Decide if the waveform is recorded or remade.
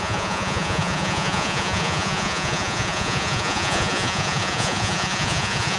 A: remade